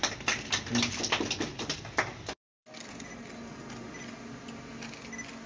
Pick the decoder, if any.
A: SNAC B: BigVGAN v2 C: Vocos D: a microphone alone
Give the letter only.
D